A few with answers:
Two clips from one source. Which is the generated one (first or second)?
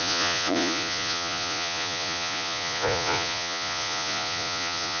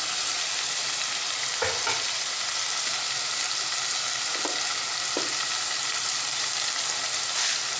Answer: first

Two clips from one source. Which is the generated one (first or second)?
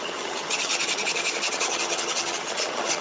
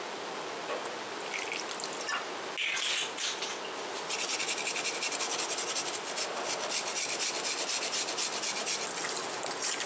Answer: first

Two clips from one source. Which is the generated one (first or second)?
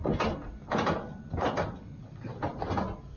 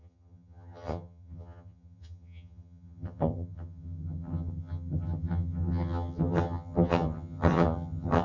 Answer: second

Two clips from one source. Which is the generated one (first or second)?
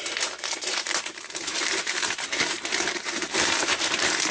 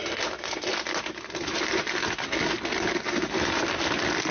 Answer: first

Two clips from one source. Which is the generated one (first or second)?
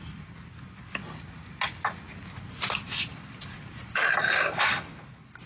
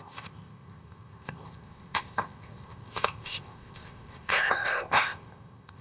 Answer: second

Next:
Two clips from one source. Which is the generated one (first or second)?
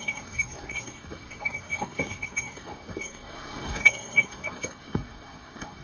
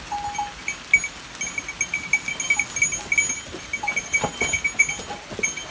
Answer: first